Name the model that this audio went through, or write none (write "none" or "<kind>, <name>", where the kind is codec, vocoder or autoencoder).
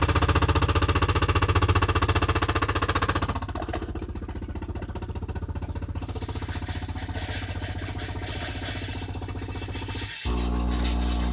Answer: none